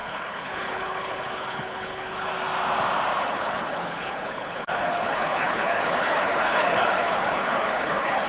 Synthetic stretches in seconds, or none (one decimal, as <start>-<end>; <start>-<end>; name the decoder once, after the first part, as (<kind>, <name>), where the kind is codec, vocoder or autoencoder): 0.0-2.3 (codec, HILCodec); 3.2-8.3

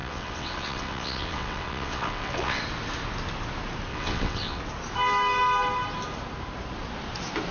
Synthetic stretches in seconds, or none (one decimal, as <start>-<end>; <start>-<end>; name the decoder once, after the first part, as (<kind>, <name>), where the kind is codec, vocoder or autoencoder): 0.0-2.6 (vocoder, WaveNeXt); 3.9-4.6

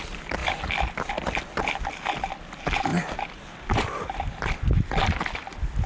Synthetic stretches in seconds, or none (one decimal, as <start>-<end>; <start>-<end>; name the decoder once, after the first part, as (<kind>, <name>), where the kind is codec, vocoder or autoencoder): none

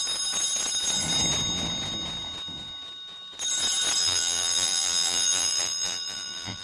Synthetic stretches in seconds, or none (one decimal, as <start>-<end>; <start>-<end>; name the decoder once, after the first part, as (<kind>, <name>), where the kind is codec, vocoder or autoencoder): 4.0-6.6 (vocoder, BigVGAN v2)

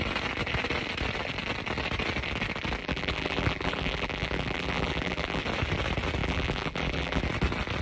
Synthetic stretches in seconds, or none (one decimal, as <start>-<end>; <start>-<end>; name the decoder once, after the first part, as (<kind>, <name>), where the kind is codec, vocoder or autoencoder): 2.8-5.4 (vocoder, BigVGAN v2); 6.2-7.2

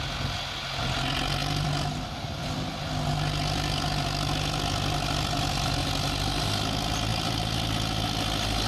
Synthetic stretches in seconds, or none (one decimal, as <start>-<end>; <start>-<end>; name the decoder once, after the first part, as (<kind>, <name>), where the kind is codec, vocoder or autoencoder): 1.4-4.3 (vocoder, BigVGAN v2); 7.1-7.7